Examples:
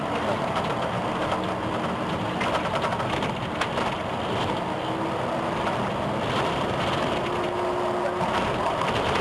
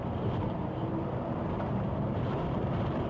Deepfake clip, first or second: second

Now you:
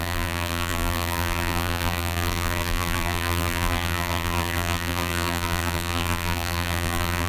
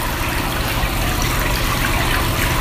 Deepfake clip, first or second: first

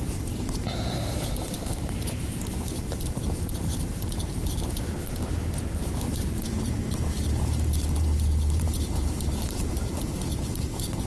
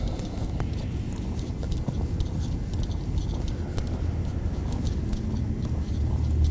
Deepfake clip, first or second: first